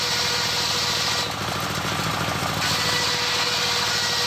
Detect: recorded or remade recorded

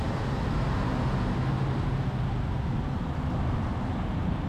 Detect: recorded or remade recorded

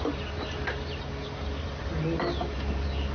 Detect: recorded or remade recorded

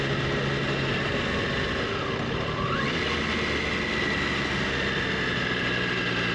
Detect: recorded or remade recorded